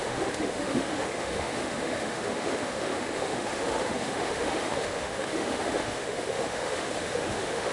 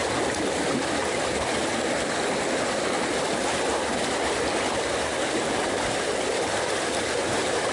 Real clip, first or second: second